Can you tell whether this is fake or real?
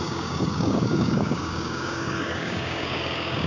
fake